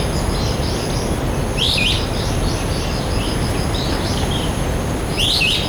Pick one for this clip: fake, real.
real